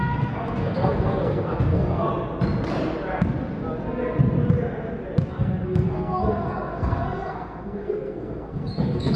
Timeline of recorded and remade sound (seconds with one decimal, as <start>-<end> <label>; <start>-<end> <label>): 0.0-2.1 remade; 2.1-5.3 recorded; 5.3-9.2 remade